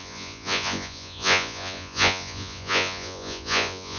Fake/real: fake